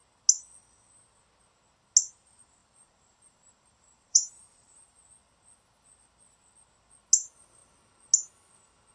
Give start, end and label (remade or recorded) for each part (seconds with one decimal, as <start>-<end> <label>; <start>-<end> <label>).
0.0-2.6 recorded; 2.6-5.0 remade; 5.0-8.9 recorded